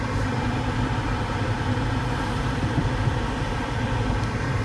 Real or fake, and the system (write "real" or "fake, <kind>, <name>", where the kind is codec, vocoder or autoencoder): fake, vocoder, BigVGAN v2